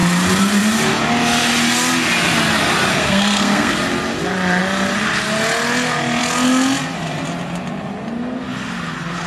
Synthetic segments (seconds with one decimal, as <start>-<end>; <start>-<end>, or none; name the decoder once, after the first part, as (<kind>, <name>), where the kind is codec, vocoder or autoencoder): 2.9-3.7 (codec, SNAC)